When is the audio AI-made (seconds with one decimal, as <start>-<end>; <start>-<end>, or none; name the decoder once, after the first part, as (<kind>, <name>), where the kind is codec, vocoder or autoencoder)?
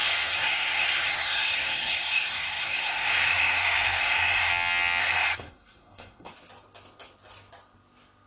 0.0-4.5 (codec, SNAC); 5.0-6.3